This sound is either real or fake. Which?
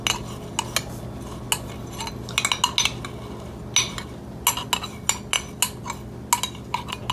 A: real